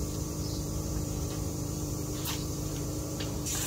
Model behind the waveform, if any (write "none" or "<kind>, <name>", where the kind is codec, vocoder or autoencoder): vocoder, BigVGAN v2